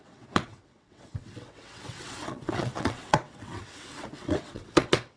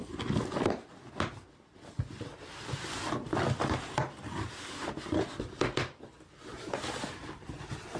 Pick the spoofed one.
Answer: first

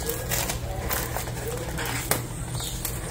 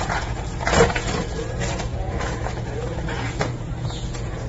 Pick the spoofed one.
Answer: second